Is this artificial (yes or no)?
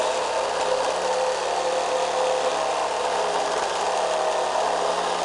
no